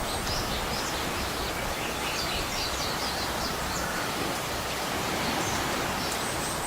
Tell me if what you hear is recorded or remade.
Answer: recorded